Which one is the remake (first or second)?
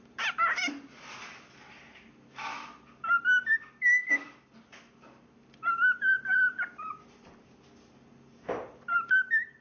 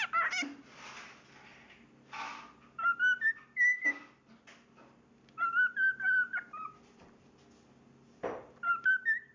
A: first